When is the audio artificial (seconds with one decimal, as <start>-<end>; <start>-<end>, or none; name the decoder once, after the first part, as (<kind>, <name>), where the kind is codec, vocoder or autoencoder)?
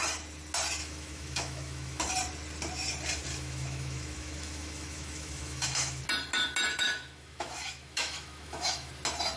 0.8-2.0 (autoencoder, DAC-VAE); 3.3-6.0; 6.7-8.9